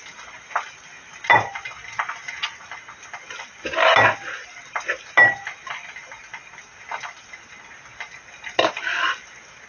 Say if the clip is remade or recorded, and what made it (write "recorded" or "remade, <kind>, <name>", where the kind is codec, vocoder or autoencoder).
recorded